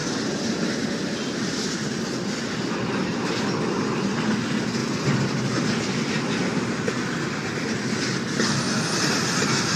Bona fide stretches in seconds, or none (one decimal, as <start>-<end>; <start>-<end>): 0.0-9.8